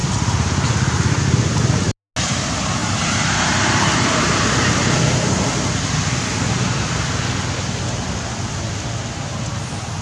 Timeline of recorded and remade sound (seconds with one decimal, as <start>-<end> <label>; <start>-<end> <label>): 0.0-1.2 remade; 1.2-2.8 recorded; 2.8-5.0 remade; 5.0-10.0 recorded